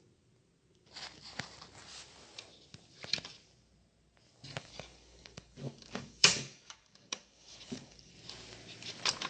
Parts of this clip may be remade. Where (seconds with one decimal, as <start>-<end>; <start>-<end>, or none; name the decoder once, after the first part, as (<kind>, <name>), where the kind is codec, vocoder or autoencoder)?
4.6-8.1 (codec, DAC)